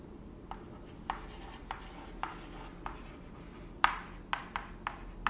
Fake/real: real